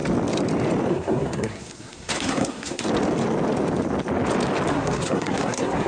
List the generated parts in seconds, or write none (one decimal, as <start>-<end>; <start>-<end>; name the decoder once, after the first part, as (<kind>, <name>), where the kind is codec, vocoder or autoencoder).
0.9-2.9 (codec, SNAC); 4.7-5.9